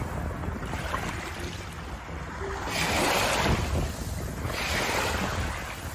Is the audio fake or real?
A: real